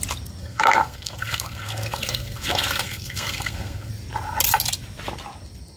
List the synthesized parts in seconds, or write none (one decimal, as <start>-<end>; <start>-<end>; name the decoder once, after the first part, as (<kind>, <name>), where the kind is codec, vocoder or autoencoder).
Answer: 0.4-3.9 (codec, SNAC)